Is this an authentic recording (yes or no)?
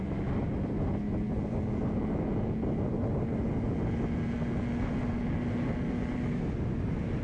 yes